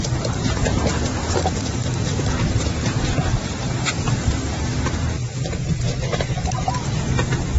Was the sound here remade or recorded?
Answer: remade